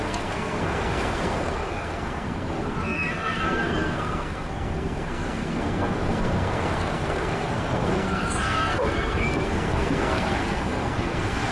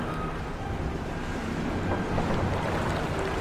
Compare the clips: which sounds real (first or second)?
second